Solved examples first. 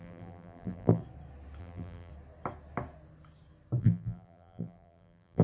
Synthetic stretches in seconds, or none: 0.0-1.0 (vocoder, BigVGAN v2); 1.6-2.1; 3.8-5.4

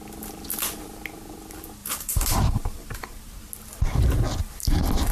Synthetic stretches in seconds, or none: 1.8-3.3 (vocoder, BigVGAN v2)